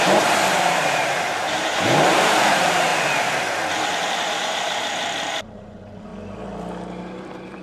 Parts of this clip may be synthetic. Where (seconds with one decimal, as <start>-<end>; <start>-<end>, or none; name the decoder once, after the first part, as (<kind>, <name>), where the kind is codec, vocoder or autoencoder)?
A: 0.0-2.9 (vocoder, BigVGAN v2); 4.2-6.1; 7.0-7.6